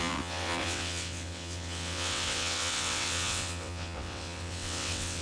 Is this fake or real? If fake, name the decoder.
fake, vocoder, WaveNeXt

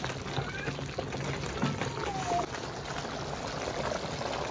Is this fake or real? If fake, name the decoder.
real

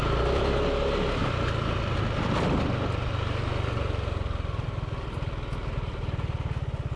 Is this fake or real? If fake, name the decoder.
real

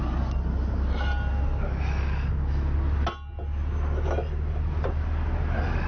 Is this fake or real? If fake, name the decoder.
real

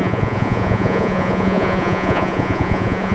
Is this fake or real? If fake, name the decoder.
fake, vocoder, Vocos